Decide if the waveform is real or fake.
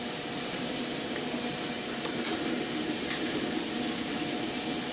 fake